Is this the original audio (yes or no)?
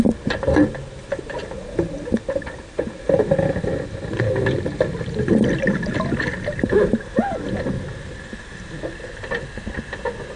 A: yes